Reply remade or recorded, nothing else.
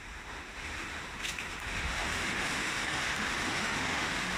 remade